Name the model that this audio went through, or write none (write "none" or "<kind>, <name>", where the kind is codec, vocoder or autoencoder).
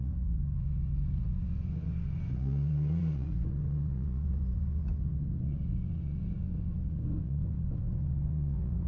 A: vocoder, Vocos